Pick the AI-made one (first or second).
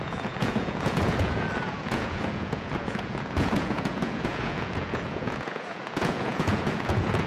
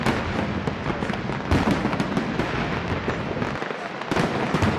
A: first